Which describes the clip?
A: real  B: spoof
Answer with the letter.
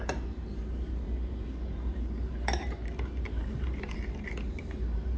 B